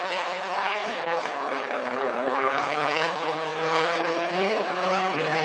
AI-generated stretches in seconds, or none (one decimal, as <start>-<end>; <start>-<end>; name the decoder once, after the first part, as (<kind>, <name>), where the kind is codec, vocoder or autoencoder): 0.0-5.4 (codec, HILCodec)